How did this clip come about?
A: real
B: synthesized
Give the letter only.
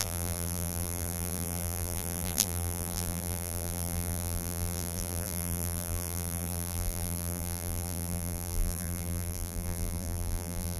B